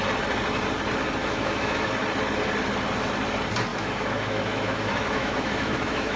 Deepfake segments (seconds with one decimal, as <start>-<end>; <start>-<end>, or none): 1.2-1.9; 3.7-6.2